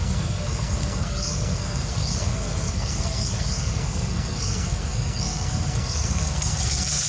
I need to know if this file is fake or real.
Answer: fake